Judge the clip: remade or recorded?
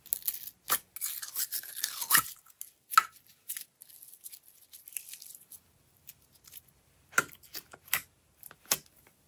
recorded